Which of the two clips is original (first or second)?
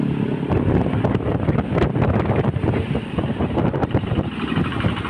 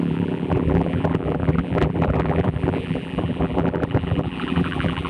first